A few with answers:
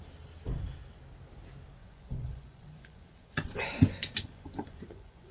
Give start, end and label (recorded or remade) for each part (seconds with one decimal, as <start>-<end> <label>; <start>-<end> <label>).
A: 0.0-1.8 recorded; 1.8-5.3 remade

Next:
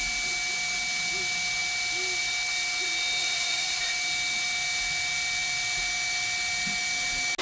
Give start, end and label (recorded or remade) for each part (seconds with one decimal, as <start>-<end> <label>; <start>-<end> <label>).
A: 0.0-3.2 recorded; 3.2-3.9 remade; 3.9-7.4 recorded

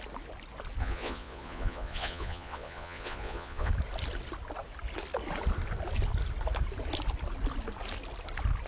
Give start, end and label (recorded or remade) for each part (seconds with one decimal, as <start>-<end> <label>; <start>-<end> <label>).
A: 0.0-0.8 recorded; 0.8-3.7 remade; 3.7-8.7 recorded

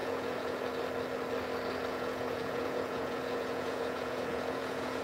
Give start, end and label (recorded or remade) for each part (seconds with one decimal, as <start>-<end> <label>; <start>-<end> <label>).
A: 0.0-0.7 remade; 0.7-1.9 recorded; 1.9-5.0 remade

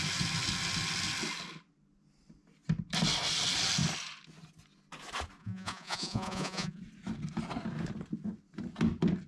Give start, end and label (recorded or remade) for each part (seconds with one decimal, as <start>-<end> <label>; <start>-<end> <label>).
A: 0.0-5.4 recorded; 5.4-6.8 remade; 6.8-9.3 recorded